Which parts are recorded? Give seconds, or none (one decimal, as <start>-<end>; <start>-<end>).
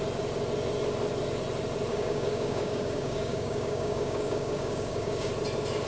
0.0-1.9; 5.3-5.9